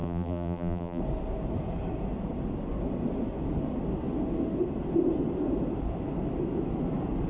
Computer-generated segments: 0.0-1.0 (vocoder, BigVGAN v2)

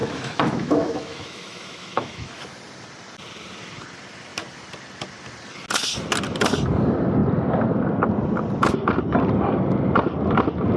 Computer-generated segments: 0.0-2.4 (autoencoder, DAC-VAE)